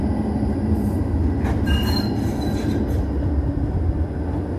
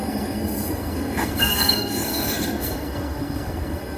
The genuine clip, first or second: first